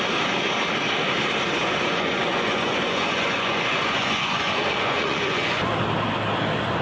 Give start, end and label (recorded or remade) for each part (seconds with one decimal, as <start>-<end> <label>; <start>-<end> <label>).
0.0-1.6 recorded; 1.6-5.7 remade; 5.7-6.8 recorded